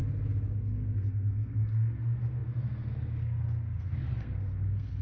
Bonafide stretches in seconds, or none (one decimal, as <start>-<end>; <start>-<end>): 0.0-0.5